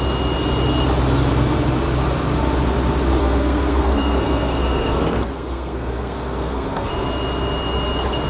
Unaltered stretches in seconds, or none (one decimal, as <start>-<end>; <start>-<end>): 0.0-3.2; 6.9-8.3